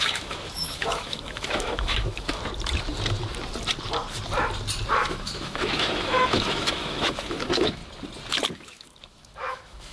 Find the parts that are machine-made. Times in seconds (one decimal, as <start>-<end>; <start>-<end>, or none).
0.0-2.4; 5.0-7.8; 8.5-9.9